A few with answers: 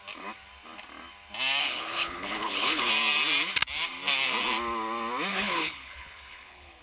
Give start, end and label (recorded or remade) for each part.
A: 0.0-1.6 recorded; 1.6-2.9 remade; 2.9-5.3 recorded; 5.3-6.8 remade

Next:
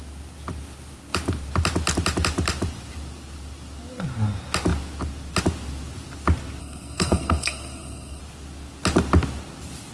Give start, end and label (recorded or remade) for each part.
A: 0.0-6.6 recorded; 6.6-8.2 remade; 8.2-9.9 recorded

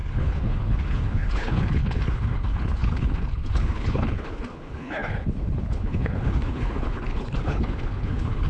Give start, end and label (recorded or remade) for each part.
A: 0.0-8.5 remade

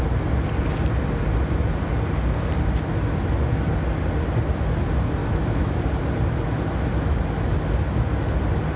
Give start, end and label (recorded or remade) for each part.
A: 0.0-5.2 recorded; 5.2-5.8 remade; 5.8-8.8 recorded

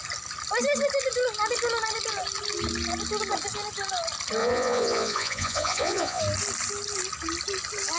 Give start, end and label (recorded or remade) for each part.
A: 0.0-4.4 recorded; 4.4-6.2 remade; 6.2-8.0 recorded

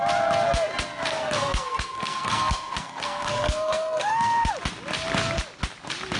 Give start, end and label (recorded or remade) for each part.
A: 0.0-1.1 recorded; 1.1-4.5 remade; 4.5-6.2 recorded

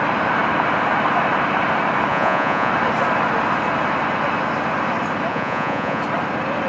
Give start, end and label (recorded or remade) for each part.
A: 0.0-2.1 recorded; 2.1-2.7 remade; 2.7-5.3 recorded; 5.3-6.0 remade; 6.0-6.7 recorded